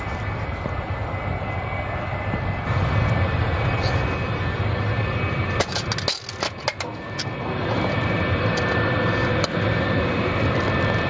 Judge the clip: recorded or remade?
recorded